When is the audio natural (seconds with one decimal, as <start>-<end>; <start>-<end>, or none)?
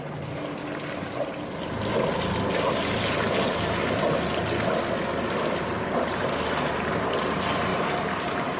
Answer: 0.6-5.6